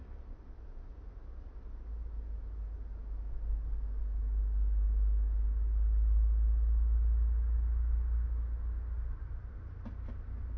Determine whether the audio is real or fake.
real